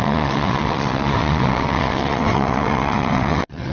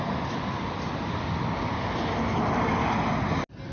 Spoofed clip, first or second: first